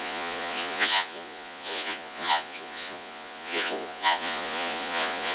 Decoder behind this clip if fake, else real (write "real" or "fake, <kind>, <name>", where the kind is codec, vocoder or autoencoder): fake, vocoder, Vocos